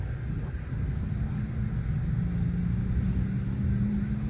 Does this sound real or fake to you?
real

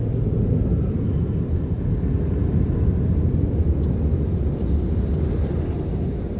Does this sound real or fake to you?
real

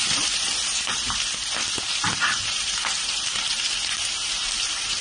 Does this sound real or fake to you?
fake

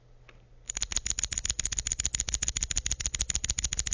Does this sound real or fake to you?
real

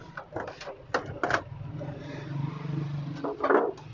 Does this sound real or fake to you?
real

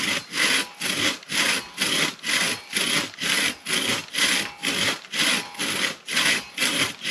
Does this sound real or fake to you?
real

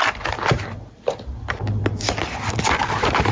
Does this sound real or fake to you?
real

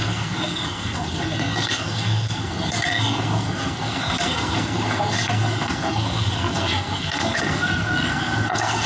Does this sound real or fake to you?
fake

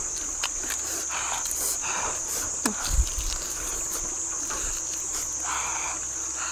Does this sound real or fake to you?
real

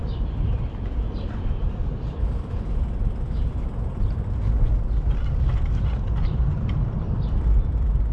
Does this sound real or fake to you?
fake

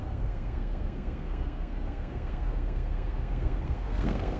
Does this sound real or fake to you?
fake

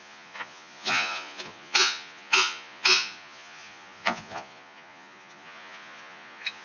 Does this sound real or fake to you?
fake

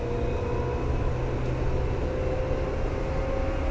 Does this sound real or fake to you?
real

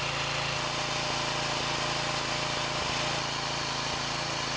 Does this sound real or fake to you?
real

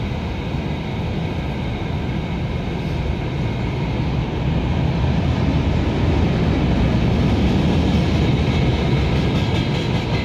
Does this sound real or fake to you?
real